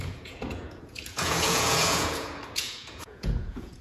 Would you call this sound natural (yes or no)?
no